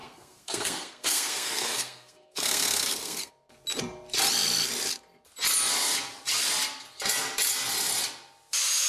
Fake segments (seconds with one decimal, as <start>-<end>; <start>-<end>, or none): 0.0-3.3